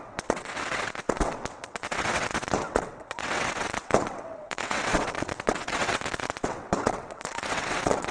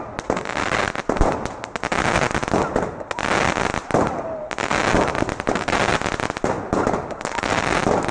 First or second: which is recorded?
second